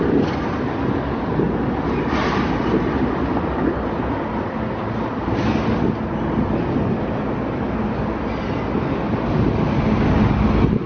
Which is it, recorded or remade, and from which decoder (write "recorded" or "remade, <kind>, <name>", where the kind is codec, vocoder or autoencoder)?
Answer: recorded